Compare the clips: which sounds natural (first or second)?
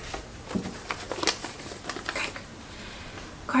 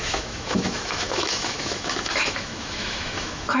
first